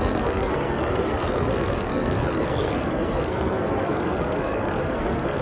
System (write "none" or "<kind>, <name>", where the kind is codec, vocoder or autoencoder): codec, SNAC